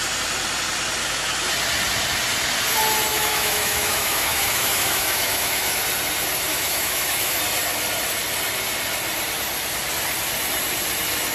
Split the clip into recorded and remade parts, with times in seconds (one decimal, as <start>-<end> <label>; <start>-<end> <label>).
0.0-1.0 recorded; 1.0-1.5 remade; 1.5-3.1 recorded; 3.1-5.8 remade; 5.8-6.5 recorded; 6.5-7.4 remade; 7.4-11.3 recorded